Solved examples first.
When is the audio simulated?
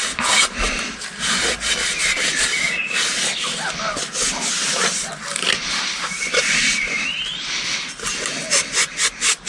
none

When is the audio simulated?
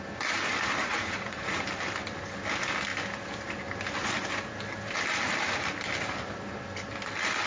0.8-1.6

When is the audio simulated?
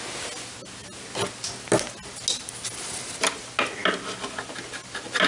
none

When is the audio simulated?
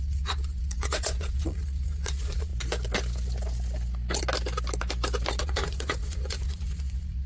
0.0-2.5; 5.4-7.3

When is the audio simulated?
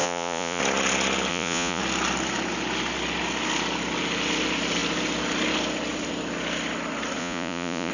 0.0-0.6; 1.3-1.8; 7.2-7.9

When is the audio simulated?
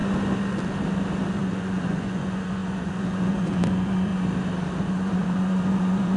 1.4-4.1; 4.8-6.2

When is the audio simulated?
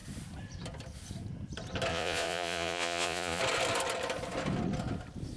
1.9-3.4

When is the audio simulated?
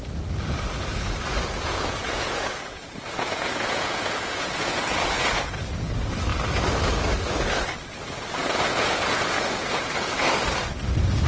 1.3-5.6; 8.4-10.2